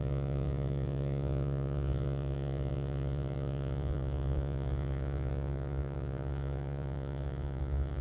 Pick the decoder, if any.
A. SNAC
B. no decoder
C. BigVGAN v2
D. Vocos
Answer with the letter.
D